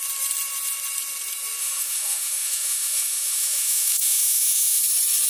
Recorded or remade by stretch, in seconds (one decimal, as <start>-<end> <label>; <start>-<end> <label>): 0.0-1.6 recorded; 1.6-4.8 remade; 4.8-5.3 recorded